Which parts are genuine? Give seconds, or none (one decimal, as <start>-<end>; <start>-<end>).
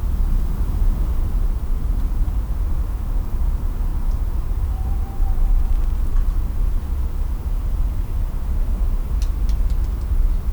0.0-10.5